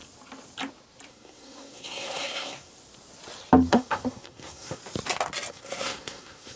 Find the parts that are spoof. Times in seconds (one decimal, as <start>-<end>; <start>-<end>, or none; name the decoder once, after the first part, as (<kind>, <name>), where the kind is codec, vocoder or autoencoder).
1.1-2.7 (codec, SNAC); 3.7-4.8; 5.5-6.6